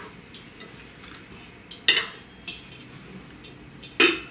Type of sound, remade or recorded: recorded